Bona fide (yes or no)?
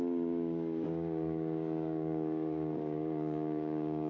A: no